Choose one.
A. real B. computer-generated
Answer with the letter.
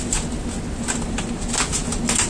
A